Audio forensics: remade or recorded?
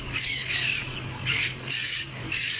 remade